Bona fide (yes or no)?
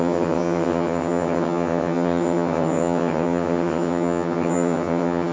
no